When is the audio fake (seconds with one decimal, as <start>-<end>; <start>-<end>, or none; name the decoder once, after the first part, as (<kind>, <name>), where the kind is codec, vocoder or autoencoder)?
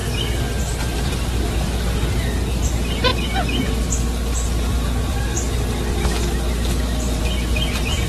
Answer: none